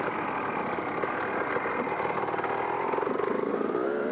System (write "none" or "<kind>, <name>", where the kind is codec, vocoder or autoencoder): none